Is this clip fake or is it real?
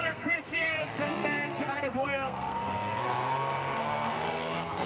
fake